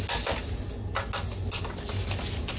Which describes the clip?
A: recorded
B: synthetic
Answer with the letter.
A